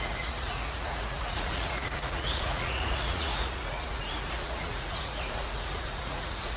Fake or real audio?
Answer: fake